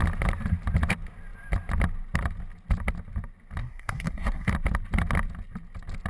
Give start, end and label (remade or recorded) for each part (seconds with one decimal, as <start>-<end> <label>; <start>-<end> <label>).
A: 0.0-3.6 recorded; 3.6-4.5 remade; 4.5-6.1 recorded